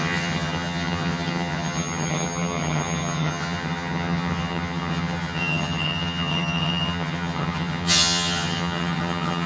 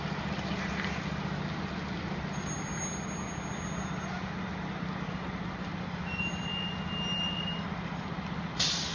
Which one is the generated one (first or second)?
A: first